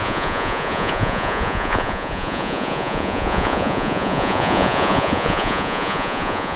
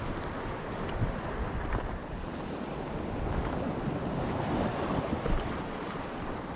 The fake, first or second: first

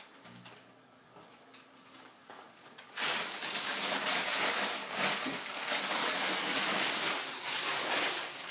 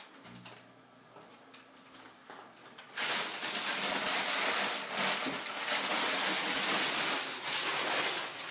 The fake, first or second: first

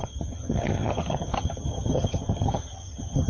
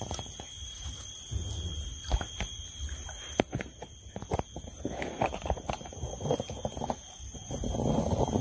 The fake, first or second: first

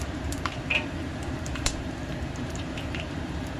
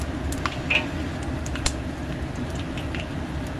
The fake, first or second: first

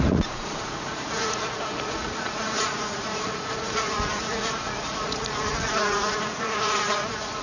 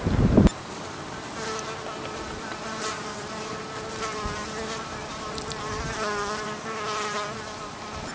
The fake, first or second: first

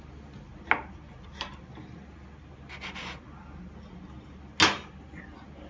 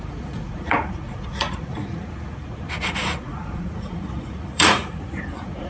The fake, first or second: second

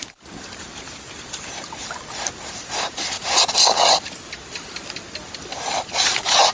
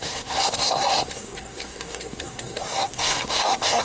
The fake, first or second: second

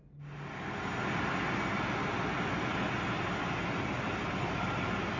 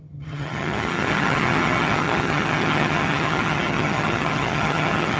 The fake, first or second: second